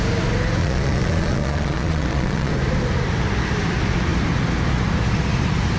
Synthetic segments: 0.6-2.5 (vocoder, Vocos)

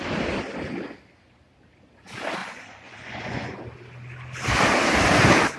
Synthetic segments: 2.4-3.6 (vocoder, Vocos)